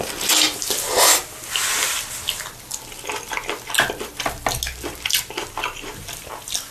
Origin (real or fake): real